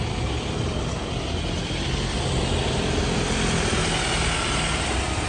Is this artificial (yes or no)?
no